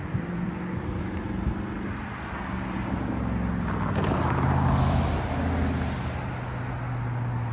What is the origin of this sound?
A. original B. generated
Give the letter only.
A